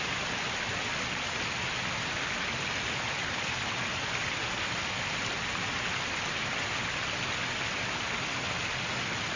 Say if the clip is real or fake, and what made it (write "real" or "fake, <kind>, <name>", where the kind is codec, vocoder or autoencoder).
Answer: real